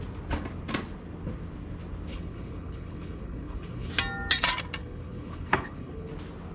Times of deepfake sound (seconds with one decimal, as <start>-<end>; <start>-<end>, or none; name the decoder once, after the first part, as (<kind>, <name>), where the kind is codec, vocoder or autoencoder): 2.1-3.9 (codec, HILCodec); 4.8-6.1